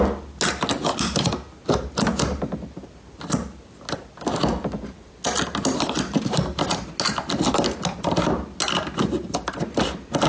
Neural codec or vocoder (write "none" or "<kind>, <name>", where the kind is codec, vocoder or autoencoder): none